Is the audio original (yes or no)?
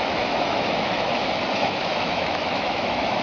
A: no